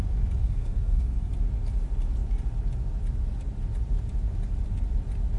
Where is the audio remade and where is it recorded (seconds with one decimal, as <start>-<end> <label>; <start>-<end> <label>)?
0.0-0.4 recorded; 0.4-1.3 remade; 1.3-5.4 recorded